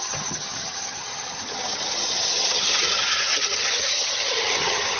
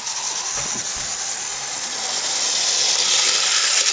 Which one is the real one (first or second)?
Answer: second